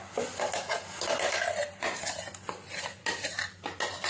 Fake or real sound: real